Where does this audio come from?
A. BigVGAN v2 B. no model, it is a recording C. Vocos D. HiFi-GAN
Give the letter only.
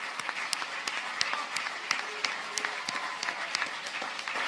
B